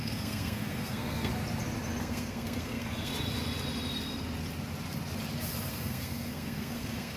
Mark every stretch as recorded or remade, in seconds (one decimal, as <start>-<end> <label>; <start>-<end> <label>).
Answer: 0.0-1.3 remade; 1.3-2.0 recorded; 2.0-3.1 remade; 3.1-5.7 recorded; 5.7-7.2 remade